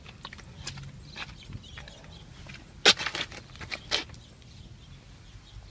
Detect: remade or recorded recorded